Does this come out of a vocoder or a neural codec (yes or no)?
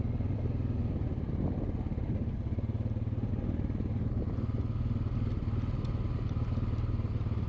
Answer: no